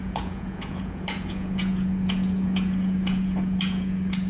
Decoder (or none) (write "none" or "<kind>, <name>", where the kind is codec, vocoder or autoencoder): vocoder, Vocos